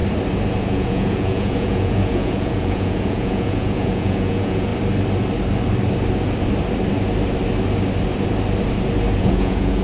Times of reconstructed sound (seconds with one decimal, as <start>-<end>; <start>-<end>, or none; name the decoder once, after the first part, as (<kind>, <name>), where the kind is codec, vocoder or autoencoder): 0.6-4.7 (vocoder, Vocos); 9.2-9.8